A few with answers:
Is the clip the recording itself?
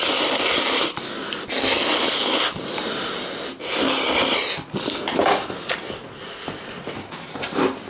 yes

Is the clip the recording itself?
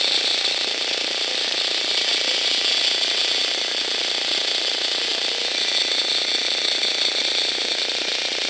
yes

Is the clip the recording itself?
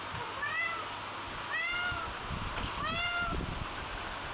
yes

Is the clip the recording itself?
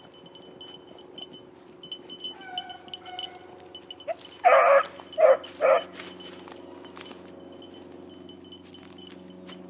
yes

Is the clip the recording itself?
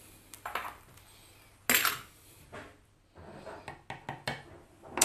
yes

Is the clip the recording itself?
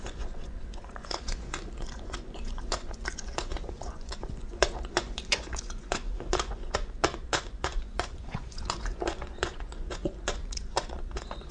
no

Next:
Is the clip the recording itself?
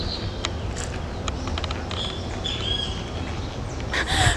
yes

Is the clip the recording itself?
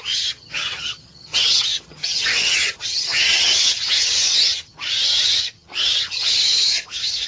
no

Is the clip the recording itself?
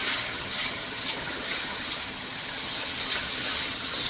no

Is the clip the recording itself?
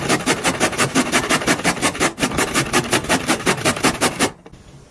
yes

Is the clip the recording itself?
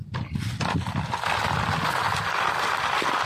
yes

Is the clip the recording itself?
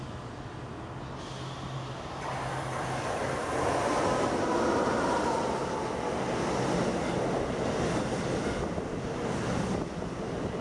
yes